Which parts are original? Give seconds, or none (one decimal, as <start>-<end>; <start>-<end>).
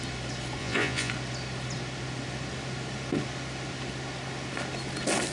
0.0-0.6; 1.1-5.3